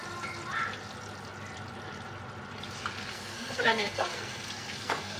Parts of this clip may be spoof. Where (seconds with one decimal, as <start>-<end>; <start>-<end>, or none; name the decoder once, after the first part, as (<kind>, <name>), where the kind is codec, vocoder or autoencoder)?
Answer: 3.1-5.2 (codec, SNAC)